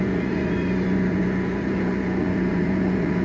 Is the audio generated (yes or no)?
yes